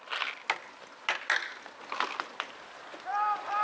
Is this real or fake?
real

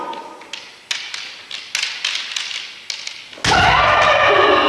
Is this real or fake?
real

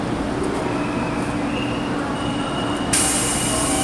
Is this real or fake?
real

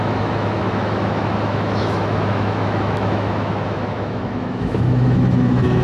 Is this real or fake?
fake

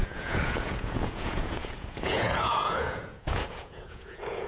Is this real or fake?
fake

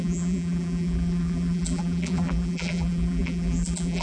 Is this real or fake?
fake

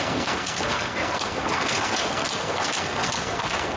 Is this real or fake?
fake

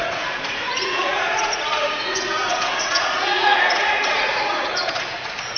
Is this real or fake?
fake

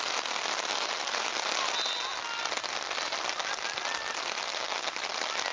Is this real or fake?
real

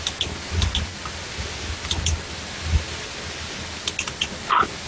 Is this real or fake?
real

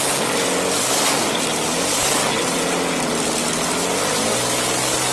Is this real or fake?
real